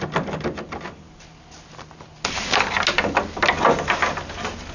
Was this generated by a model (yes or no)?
no